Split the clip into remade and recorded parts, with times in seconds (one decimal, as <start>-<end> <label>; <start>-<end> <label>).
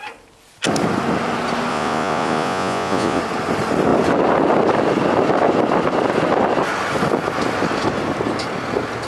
0.0-1.7 recorded; 1.7-3.2 remade; 3.2-9.1 recorded